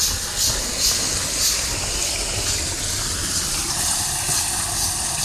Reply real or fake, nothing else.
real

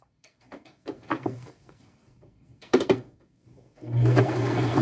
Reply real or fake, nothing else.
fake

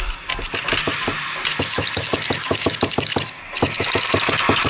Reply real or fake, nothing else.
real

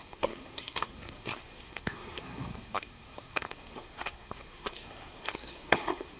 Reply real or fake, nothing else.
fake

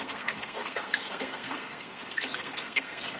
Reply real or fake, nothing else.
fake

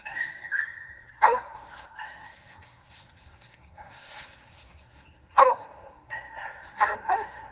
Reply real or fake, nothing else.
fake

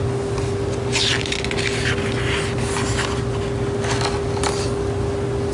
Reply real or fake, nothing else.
real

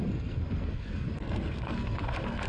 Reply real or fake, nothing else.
fake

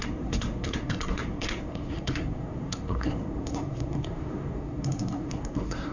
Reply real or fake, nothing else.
fake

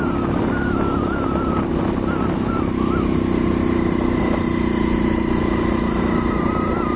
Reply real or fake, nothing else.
real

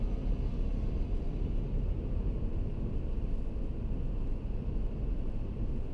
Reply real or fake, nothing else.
real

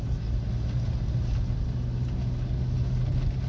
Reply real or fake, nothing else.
real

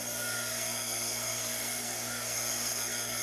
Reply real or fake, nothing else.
fake